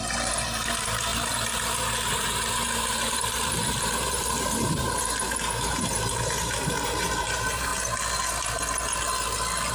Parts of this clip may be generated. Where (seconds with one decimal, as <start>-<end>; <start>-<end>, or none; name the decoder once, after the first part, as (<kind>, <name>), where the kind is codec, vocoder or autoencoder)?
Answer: 0.0-7.7 (vocoder, BigVGAN v2)